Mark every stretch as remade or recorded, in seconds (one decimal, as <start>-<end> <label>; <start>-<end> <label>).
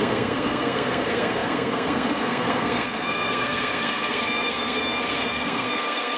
0.0-6.2 remade